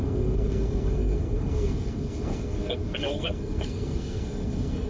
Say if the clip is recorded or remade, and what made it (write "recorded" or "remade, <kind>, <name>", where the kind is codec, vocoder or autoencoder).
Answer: remade, codec, SNAC